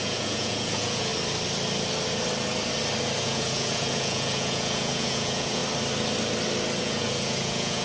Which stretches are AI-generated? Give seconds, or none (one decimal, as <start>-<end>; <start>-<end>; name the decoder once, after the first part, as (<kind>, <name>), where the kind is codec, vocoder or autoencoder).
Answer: 0.0-1.1 (vocoder, Vocos); 3.2-5.6; 6.8-7.8